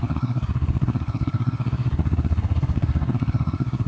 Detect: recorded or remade remade